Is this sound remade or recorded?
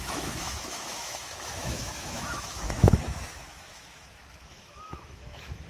remade